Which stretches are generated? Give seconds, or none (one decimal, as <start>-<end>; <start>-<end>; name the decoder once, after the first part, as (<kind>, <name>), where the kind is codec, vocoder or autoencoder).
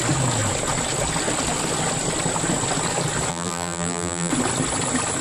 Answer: 3.3-4.3 (vocoder, BigVGAN v2)